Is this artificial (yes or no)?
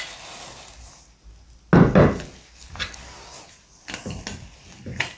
no